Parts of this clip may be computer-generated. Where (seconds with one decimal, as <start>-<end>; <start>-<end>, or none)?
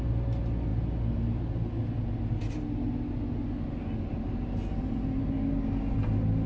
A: none